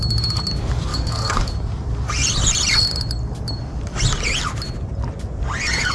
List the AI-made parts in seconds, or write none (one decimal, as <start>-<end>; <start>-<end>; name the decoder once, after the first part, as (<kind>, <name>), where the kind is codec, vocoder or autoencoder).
0.9-1.5 (codec, DAC)